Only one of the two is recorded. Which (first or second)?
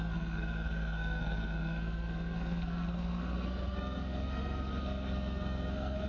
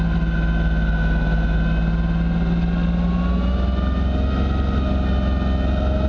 second